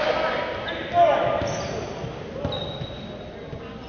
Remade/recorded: recorded